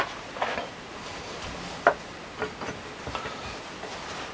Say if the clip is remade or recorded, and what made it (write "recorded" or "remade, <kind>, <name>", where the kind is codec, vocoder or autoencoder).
recorded